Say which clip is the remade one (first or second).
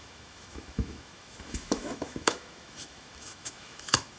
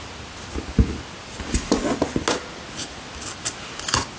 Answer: first